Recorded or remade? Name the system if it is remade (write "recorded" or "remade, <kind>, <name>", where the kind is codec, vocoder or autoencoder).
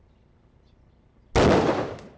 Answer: recorded